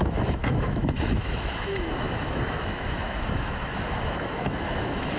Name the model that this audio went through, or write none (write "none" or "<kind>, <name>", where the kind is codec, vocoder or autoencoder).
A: autoencoder, DAC-VAE